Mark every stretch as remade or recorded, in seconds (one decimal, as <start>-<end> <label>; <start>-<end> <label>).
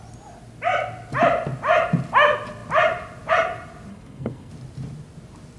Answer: 0.0-3.9 recorded; 3.9-4.5 remade; 4.5-5.6 recorded